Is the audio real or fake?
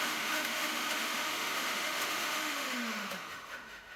fake